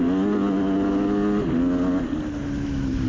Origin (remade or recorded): recorded